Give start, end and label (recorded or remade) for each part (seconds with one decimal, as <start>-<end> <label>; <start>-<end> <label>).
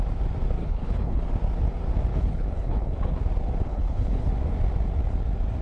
0.0-0.6 recorded; 0.6-1.2 remade; 1.2-2.1 recorded; 2.1-3.2 remade; 3.2-3.7 recorded; 3.7-4.3 remade; 4.3-5.6 recorded